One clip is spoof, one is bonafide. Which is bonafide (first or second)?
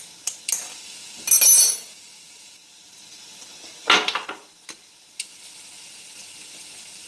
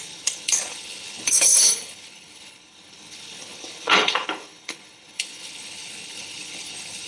first